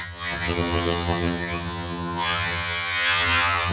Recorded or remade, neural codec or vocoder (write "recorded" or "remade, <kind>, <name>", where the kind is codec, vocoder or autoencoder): remade, vocoder, HiFi-GAN